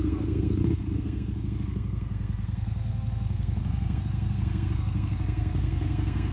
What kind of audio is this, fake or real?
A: fake